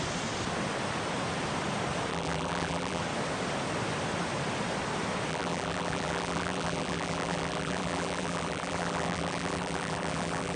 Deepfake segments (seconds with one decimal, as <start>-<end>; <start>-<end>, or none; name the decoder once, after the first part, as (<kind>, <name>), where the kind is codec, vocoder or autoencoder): 2.1-3.0 (vocoder, BigVGAN v2); 5.3-10.6